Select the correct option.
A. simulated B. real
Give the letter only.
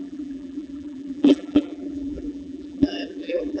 A